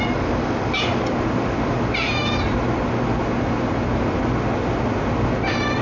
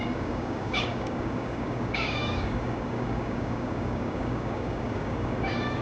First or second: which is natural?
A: first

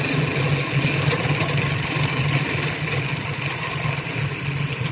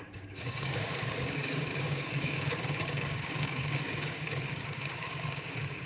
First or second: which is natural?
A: first